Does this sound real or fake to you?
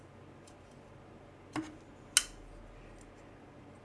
real